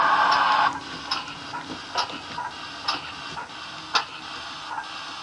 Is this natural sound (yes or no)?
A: yes